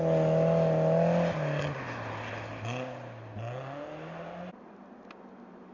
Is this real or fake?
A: real